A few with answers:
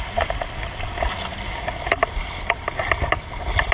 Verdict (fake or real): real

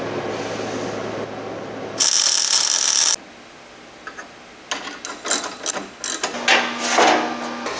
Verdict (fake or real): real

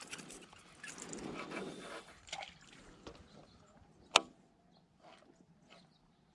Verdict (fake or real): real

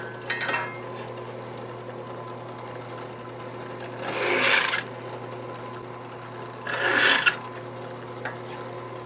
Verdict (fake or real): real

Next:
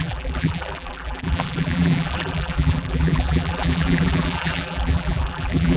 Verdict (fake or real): fake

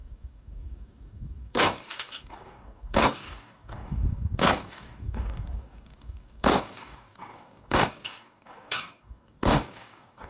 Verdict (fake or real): fake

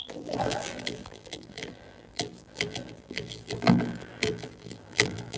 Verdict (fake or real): fake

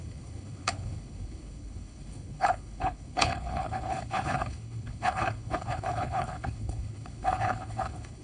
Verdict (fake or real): fake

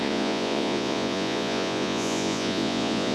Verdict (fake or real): fake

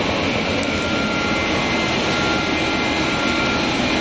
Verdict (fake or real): real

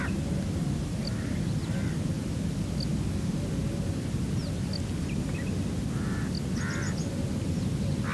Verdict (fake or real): real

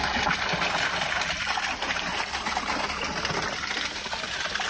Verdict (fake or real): real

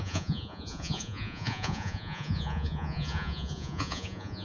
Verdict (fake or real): fake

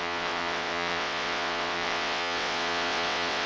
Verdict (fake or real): fake